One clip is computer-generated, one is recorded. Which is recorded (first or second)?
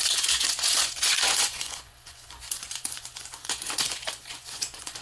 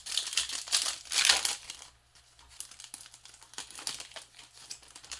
second